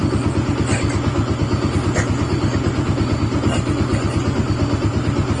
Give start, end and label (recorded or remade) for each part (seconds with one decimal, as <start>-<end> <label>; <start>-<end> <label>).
0.0-5.4 recorded

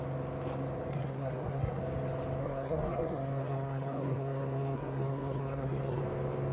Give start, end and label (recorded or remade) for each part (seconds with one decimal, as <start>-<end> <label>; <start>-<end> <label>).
0.0-0.9 recorded; 0.9-1.8 remade; 1.8-2.4 recorded; 2.4-6.0 remade; 6.0-6.5 recorded

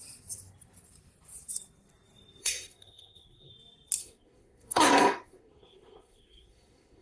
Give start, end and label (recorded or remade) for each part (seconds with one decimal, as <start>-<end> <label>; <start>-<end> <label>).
0.0-2.4 recorded; 2.4-3.5 remade; 3.5-4.0 recorded; 4.0-7.0 remade

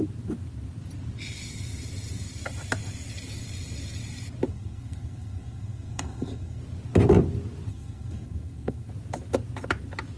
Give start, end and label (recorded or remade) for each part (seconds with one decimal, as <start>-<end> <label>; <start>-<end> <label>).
0.0-4.5 recorded; 4.5-6.6 remade; 6.6-7.7 recorded; 7.7-8.9 remade; 8.9-10.2 recorded

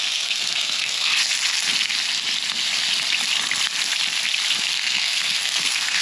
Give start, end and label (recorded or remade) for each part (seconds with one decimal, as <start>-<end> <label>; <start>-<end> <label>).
0.0-1.1 remade; 1.1-4.7 recorded; 4.7-6.0 remade

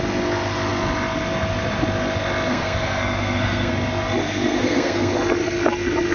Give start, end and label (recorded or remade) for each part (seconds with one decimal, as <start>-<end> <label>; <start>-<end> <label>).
0.0-2.5 recorded; 2.5-3.7 remade; 3.7-4.2 recorded; 4.2-5.1 remade; 5.1-6.1 recorded

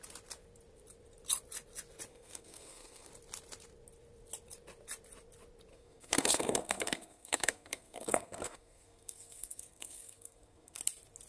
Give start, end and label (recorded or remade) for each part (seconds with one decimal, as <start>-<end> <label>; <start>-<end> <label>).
0.0-2.1 recorded; 2.1-3.1 remade; 3.1-5.7 recorded; 5.7-10.8 remade; 10.8-11.3 recorded

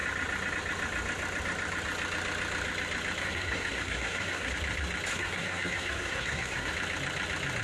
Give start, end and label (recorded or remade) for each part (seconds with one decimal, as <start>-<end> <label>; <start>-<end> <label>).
0.0-3.2 recorded; 3.2-4.5 remade; 4.5-5.1 recorded; 5.1-6.7 remade; 6.7-7.6 recorded